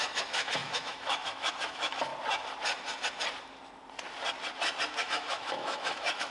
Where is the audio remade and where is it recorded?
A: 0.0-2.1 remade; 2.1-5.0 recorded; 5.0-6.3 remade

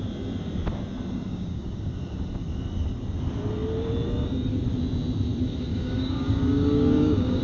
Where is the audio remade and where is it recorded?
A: 0.0-1.3 recorded; 1.3-1.9 remade; 1.9-5.7 recorded; 5.7-7.4 remade

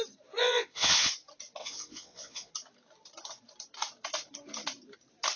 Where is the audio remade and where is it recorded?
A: 0.0-0.4 recorded; 0.4-1.1 remade; 1.1-1.6 recorded; 1.6-2.5 remade; 2.5-5.4 recorded

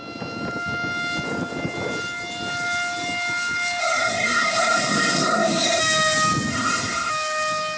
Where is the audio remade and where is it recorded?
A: 0.0-3.8 recorded; 3.8-5.8 remade; 5.8-6.5 recorded; 6.5-7.1 remade; 7.1-7.8 recorded

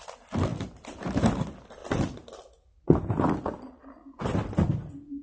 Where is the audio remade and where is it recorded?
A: 0.0-1.8 remade; 1.8-3.2 recorded; 3.2-3.8 remade; 3.8-5.2 recorded

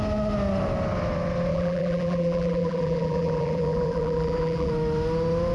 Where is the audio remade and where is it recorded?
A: 0.0-1.5 recorded; 1.5-4.7 remade; 4.7-5.5 recorded

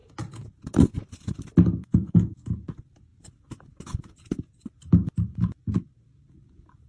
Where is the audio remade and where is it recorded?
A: 0.0-1.8 recorded; 1.8-2.5 remade; 2.5-6.9 recorded